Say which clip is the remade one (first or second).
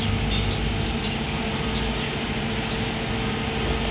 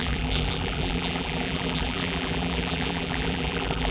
second